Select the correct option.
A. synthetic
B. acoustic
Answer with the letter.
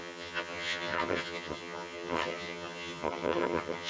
A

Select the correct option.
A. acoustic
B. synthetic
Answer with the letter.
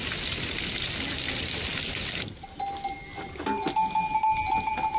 A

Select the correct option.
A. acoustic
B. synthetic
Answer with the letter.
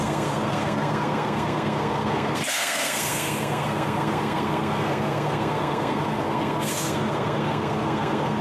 B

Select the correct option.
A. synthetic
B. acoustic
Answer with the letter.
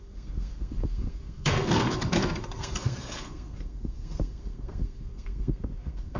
A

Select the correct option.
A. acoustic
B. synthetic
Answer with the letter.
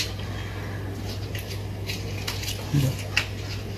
A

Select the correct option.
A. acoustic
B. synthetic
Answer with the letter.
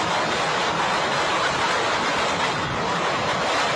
A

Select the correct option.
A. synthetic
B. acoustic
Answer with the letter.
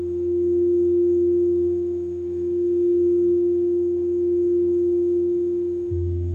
A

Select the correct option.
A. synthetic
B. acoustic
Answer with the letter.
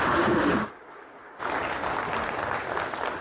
B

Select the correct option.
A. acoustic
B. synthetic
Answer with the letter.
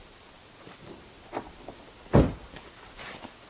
A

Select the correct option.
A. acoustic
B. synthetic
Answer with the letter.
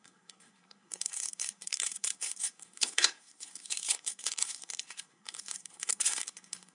B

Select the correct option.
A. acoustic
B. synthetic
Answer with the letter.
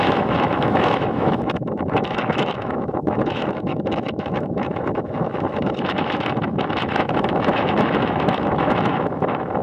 B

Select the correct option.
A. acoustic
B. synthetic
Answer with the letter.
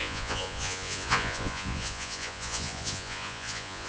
B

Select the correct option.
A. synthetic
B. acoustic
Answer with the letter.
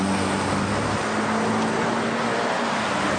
B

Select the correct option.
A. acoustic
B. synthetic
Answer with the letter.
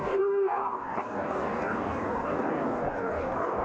B